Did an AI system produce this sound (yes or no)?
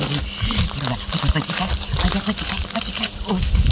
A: no